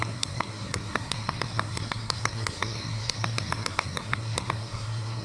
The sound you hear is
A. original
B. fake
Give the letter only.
B